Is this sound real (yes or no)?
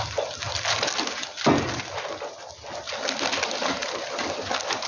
yes